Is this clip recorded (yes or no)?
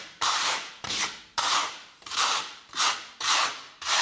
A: no